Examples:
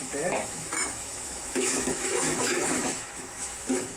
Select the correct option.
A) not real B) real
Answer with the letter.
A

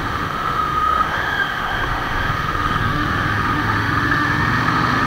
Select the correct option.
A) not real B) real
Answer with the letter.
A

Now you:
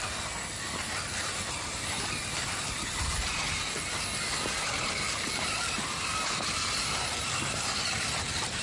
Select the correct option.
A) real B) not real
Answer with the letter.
A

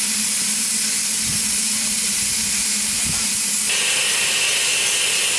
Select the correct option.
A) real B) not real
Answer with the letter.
A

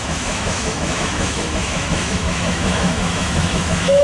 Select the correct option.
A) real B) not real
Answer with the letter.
B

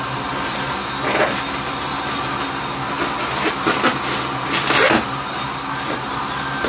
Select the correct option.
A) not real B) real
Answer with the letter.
B